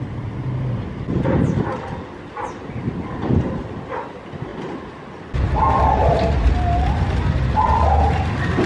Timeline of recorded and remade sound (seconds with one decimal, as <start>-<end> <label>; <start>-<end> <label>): 0.0-8.7 recorded